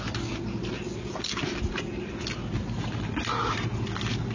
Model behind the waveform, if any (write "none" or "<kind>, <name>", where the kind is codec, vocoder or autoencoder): none